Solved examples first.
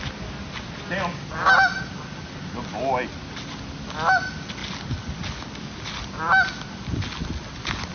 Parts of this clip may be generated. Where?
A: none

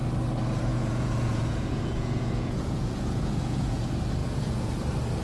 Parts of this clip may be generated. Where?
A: 0.7-3.8 (vocoder, Vocos); 4.2-4.7

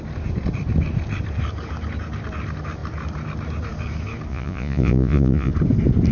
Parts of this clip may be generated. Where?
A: 4.3-5.5 (vocoder, Vocos)

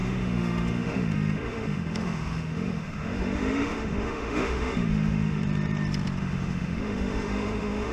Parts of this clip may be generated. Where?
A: 0.0-5.4 (autoencoder, DAC-VAE); 6.2-7.9

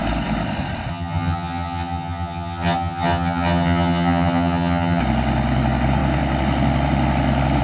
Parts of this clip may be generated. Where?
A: 0.9-5.0 (vocoder, HiFi-GAN)

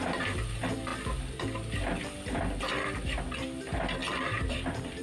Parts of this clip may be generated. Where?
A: 4.0-5.0 (vocoder, BigVGAN v2)

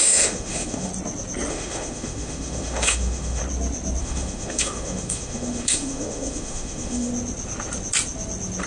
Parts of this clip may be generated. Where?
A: 0.0-0.9 (autoencoder, DAC-VAE); 1.5-3.4; 4.0-7.1

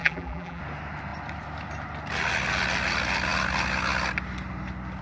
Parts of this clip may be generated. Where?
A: 0.0-0.6 (vocoder, BigVGAN v2)